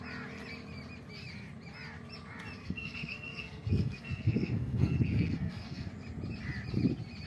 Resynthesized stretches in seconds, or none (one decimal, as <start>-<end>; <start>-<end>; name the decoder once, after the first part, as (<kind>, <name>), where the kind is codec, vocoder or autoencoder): 2.6-5.9 (codec, SNAC)